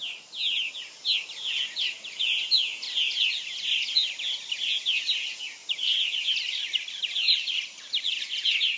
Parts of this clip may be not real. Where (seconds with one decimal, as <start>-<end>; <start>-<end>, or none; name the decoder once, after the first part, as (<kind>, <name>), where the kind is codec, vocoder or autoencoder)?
5.6-8.1 (vocoder, BigVGAN v2)